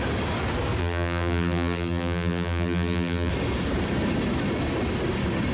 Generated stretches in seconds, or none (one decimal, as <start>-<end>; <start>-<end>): 0.8-3.3